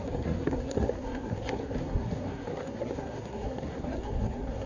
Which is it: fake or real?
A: fake